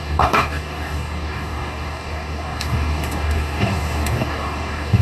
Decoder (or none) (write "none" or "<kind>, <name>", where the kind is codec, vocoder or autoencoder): codec, DAC